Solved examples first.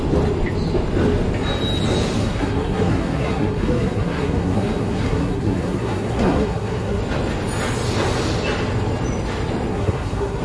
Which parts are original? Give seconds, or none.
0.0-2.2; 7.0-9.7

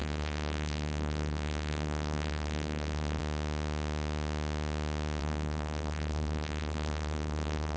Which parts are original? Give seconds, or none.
3.2-5.2